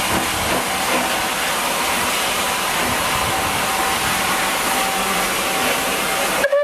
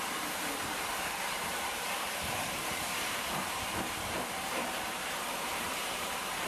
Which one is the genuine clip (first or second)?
first